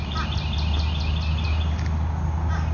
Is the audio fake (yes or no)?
no